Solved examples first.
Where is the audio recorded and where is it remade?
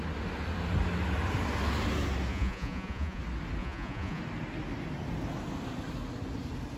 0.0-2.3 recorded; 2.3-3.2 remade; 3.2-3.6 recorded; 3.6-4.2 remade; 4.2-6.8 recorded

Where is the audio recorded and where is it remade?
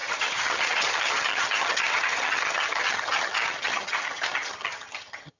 0.0-5.4 remade